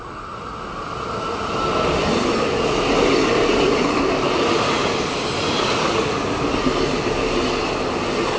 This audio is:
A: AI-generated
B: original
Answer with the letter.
B